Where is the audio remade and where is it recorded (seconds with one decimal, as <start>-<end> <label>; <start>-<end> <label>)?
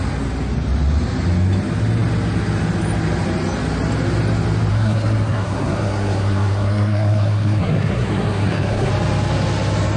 0.0-4.7 recorded; 4.7-8.9 remade; 8.9-10.0 recorded